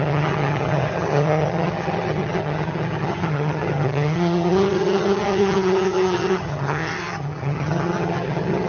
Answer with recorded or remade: remade